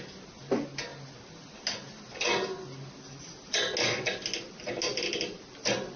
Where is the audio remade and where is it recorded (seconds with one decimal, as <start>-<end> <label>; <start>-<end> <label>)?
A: 0.0-4.9 recorded; 4.9-6.0 remade